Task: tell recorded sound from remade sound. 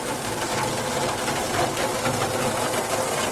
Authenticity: recorded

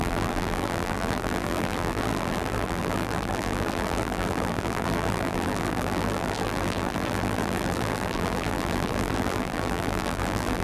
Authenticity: remade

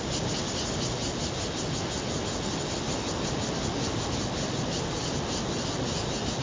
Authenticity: recorded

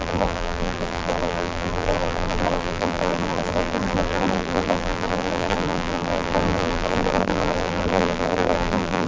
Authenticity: remade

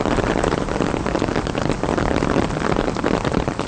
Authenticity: remade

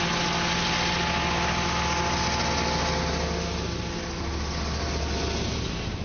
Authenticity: recorded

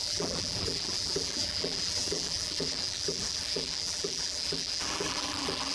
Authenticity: remade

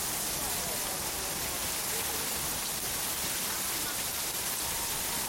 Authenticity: recorded